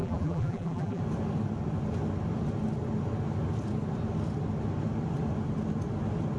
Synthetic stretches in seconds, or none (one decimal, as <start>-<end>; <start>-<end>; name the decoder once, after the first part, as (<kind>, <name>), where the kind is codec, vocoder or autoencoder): 0.0-1.0 (vocoder, BigVGAN v2)